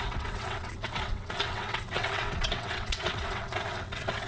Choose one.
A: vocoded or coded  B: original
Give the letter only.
A